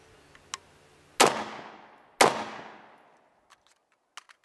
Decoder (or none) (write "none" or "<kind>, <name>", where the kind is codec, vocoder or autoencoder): none